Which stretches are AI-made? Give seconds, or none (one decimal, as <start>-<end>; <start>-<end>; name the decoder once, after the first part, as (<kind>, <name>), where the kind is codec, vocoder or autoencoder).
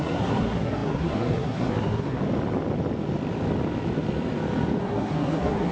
0.0-2.2 (codec, SNAC); 4.8-5.7